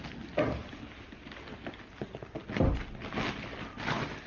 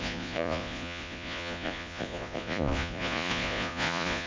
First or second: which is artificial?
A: second